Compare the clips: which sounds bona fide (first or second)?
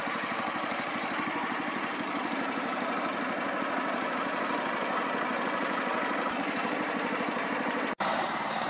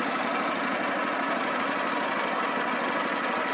second